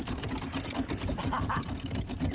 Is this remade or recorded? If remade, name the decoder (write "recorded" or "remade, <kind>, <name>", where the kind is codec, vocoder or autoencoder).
recorded